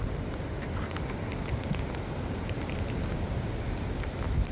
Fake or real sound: real